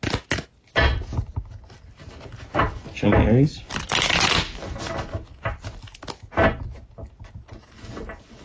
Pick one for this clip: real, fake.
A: real